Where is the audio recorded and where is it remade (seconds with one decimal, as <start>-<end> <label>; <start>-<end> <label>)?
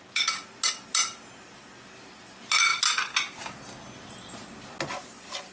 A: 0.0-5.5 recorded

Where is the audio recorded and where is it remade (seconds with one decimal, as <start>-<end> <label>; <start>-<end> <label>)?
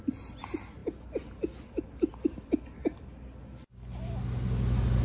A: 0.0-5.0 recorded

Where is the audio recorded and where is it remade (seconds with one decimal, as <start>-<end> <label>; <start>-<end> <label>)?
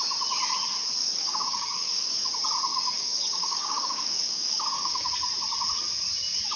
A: 0.0-1.0 recorded; 1.0-2.3 remade; 2.3-2.7 recorded; 2.7-5.1 remade; 5.1-6.6 recorded